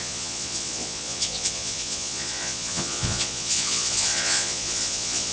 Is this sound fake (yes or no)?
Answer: yes